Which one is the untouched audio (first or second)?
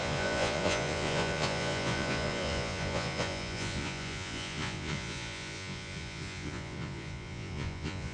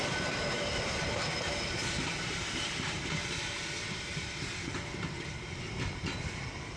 second